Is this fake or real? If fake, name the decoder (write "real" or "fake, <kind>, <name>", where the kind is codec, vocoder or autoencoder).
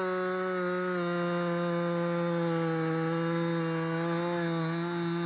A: real